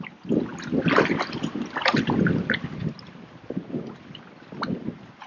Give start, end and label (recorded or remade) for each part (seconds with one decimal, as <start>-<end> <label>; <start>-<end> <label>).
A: 0.0-5.3 recorded